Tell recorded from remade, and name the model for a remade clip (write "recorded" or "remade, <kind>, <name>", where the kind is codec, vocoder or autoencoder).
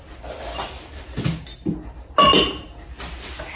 recorded